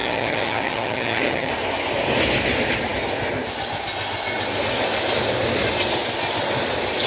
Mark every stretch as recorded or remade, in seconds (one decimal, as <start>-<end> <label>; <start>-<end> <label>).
0.0-1.5 remade; 1.5-7.1 recorded